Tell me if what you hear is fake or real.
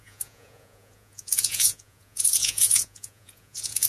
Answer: fake